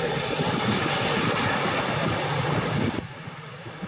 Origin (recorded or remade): recorded